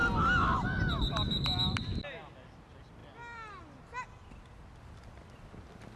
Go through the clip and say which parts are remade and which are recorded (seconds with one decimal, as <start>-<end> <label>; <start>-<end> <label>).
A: 0.0-6.0 recorded